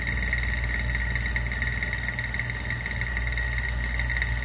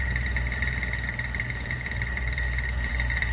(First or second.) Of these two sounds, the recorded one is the first